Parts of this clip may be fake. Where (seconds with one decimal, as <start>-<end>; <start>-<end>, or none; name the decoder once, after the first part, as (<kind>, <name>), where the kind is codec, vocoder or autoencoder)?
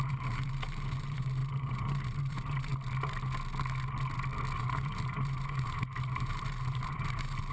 0.0-2.7 (vocoder, BigVGAN v2); 4.6-7.5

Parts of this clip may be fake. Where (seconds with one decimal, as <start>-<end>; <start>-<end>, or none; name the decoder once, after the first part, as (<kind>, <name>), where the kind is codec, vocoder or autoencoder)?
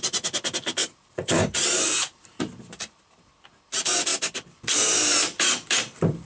0.8-3.3 (vocoder, BigVGAN v2)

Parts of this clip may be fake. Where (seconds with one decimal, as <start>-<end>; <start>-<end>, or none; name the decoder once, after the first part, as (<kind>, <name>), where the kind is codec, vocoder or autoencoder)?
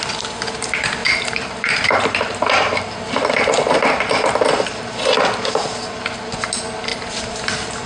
1.0-5.2 (vocoder, BigVGAN v2); 6.9-7.4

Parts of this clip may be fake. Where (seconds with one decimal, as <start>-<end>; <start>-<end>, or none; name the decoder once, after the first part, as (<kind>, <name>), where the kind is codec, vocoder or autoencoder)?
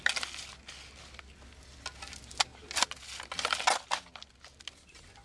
none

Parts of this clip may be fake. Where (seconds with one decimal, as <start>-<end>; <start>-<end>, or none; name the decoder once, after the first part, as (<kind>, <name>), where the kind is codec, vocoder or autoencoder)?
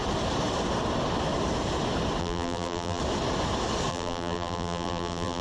2.2-3.0 (vocoder, BigVGAN v2); 3.9-5.4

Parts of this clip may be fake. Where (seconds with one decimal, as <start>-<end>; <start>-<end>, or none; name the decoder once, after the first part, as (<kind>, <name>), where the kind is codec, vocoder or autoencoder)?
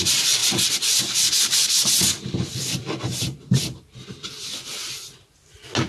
0.4-3.9 (vocoder, BigVGAN v2)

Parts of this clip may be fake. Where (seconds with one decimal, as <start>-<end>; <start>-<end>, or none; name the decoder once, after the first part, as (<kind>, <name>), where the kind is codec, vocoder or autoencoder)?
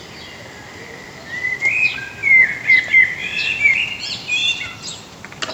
3.2-3.8 (vocoder, BigVGAN v2)